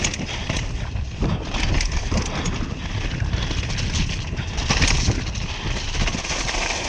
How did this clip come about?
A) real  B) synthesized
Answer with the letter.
A